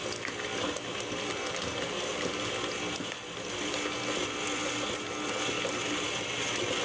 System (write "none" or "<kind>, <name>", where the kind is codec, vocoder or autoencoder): none